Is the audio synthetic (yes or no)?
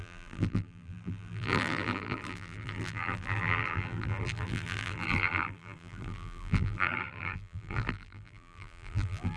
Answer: yes